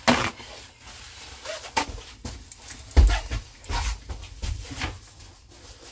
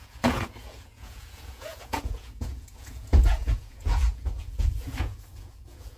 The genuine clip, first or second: first